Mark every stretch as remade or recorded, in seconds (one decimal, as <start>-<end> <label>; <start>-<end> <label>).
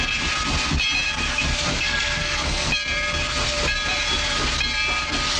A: 0.0-1.7 recorded; 1.7-2.7 remade; 2.7-5.4 recorded